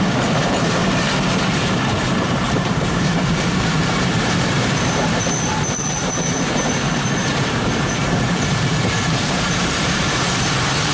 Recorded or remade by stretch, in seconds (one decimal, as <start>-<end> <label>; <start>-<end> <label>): 0.0-0.8 remade; 0.8-1.4 recorded; 1.4-10.9 remade